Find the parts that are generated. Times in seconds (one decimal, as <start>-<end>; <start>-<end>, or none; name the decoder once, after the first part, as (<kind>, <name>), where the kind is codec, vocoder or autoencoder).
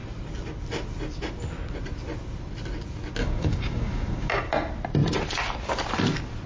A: 3.2-4.3 (codec, DAC)